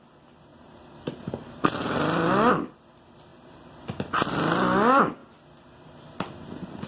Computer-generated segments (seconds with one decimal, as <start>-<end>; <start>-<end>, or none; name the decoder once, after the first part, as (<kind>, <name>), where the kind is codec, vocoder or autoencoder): 0.5-2.3 (vocoder, BigVGAN v2); 3.3-4.1

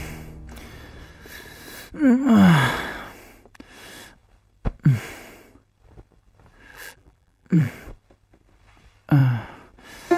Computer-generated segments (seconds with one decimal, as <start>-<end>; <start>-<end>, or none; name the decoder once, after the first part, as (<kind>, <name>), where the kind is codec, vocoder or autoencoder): 6.7-7.7 (vocoder, BigVGAN v2)

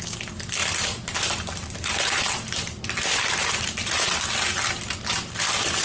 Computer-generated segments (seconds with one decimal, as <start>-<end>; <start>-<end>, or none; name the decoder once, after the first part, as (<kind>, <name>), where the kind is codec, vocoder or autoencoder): 0.6-4.1 (vocoder, BigVGAN v2)

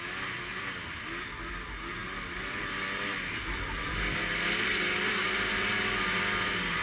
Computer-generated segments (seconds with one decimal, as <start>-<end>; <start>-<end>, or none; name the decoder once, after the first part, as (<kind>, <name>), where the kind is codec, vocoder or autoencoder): 0.5-1.3 (vocoder, BigVGAN v2); 2.0-5.7

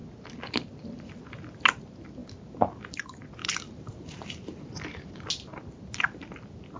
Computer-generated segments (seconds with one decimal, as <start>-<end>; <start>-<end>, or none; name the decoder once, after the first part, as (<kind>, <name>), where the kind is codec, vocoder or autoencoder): 3.4-5.3 (vocoder, BigVGAN v2)